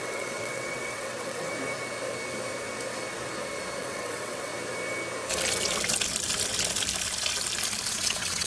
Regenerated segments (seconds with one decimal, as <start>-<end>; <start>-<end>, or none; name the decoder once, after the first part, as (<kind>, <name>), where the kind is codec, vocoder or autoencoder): 0.0-1.5 (vocoder, WaveNeXt); 3.8-4.5; 7.9-8.5